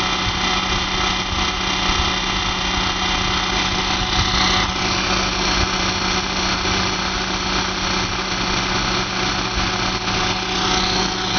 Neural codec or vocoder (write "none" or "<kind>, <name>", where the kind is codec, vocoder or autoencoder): none